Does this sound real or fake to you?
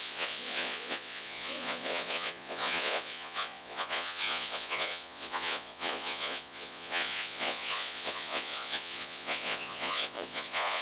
fake